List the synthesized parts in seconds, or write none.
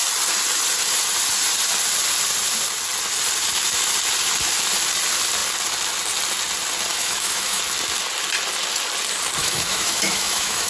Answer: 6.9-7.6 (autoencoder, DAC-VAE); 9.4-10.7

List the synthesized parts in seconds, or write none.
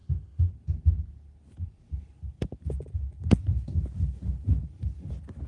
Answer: 0.0-0.5 (autoencoder, DAC-VAE)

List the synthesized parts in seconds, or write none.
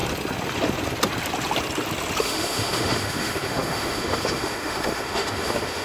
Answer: 2.2-5.8 (autoencoder, DAC-VAE)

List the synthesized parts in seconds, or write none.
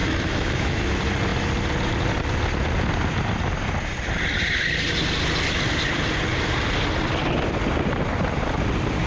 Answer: 0.0-0.9 (autoencoder, DAC-VAE)